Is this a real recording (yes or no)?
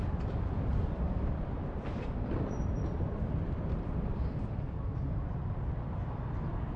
no